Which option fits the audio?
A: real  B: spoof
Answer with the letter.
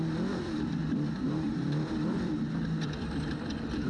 B